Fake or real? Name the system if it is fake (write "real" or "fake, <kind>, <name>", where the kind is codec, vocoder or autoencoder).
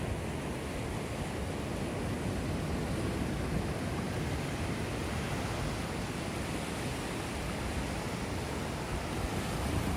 real